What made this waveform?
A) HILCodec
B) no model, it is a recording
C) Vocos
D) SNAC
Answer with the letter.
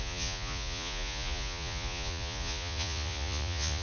C